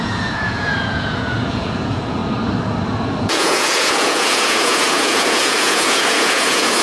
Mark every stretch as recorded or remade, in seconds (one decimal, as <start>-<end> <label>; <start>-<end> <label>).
0.0-2.2 remade; 2.2-3.2 recorded; 3.2-6.8 remade